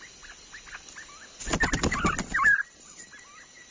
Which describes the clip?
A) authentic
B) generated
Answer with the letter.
A